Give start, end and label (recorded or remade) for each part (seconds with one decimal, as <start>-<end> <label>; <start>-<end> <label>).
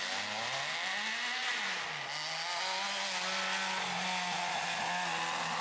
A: 0.0-5.6 recorded